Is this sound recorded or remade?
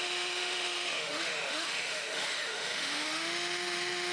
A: remade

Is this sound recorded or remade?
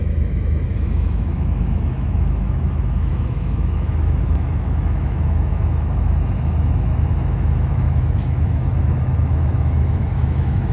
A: remade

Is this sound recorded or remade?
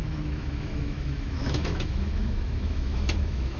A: remade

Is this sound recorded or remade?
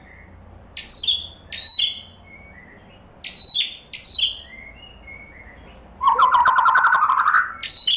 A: recorded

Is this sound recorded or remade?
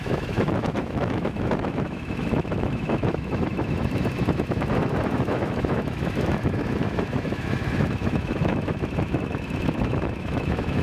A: remade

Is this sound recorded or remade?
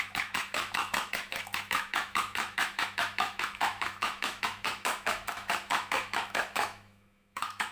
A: remade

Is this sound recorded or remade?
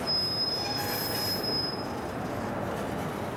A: recorded